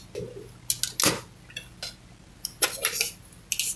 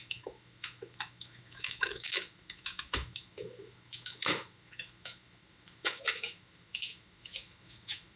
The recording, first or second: first